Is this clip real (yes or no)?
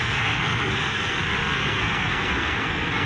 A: no